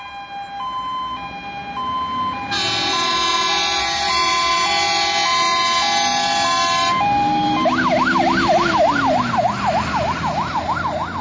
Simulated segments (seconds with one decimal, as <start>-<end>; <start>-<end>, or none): none